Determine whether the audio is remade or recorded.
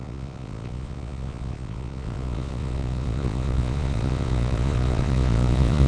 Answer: remade